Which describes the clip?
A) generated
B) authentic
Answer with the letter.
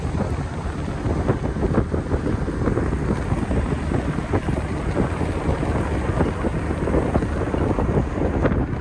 B